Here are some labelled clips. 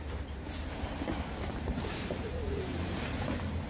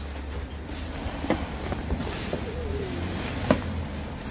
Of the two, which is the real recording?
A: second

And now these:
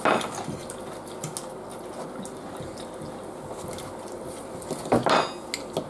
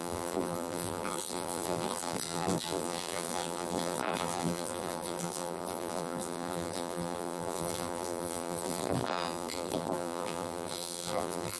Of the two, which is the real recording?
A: first